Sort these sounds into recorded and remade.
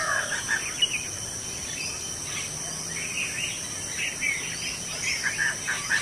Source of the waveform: recorded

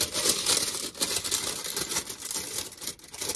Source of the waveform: recorded